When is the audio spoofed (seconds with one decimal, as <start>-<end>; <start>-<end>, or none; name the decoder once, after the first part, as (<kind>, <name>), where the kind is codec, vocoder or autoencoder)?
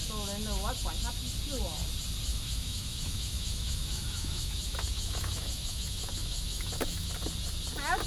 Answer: 2.3-7.1 (autoencoder, DAC-VAE)